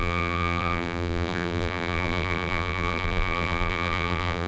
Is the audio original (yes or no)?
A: no